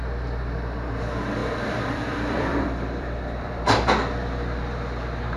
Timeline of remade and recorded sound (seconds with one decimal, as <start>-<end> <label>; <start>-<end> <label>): 0.0-1.4 recorded; 1.4-3.6 remade; 3.6-5.4 recorded